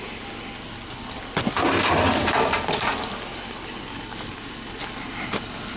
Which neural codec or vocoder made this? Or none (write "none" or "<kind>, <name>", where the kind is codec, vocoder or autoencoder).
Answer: none